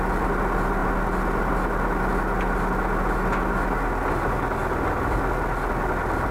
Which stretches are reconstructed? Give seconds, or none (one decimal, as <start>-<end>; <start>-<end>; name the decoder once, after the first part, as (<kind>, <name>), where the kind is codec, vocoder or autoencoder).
none